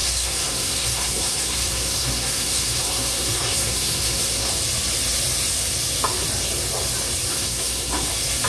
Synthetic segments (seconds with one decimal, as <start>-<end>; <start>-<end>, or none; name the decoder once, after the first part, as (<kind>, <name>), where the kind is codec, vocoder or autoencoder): 0.0-4.5 (codec, SNAC); 7.3-8.1